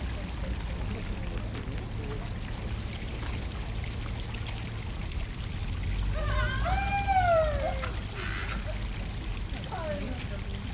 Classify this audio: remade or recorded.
recorded